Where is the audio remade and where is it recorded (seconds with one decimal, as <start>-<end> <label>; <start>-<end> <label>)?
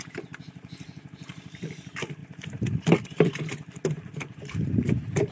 0.0-5.3 remade